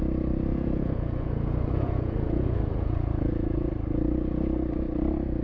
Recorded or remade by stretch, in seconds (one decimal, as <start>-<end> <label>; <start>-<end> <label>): 0.0-0.5 recorded; 0.5-3.7 remade; 3.7-5.4 recorded